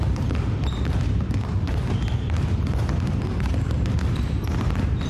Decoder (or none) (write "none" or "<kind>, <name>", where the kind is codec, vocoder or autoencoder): none